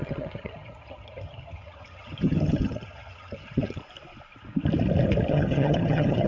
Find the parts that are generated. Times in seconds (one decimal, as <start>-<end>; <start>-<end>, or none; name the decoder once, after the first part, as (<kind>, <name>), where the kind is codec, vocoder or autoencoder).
0.0-3.8 (vocoder, HiFi-GAN); 5.3-6.3